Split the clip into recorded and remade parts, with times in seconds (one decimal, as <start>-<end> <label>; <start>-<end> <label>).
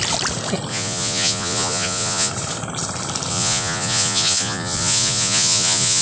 0.0-0.7 recorded; 0.7-2.3 remade; 2.3-3.3 recorded; 3.3-6.0 remade